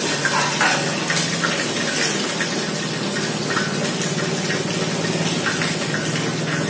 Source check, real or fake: real